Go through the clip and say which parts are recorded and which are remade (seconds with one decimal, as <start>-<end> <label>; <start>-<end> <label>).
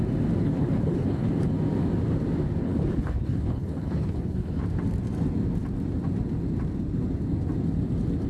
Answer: 0.0-0.4 recorded; 0.4-1.3 remade; 1.3-2.6 recorded; 2.6-4.6 remade; 4.6-8.3 recorded